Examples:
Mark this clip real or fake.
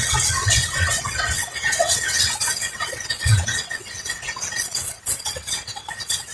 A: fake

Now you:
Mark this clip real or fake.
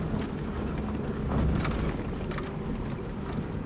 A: real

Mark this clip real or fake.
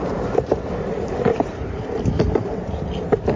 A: fake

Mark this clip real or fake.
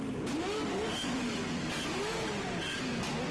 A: real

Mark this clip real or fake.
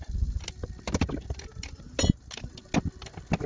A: real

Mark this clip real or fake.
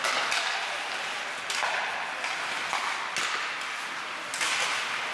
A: real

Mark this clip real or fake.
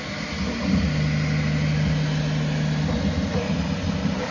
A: real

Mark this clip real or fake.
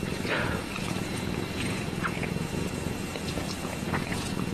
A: fake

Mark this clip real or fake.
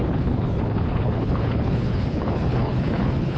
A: fake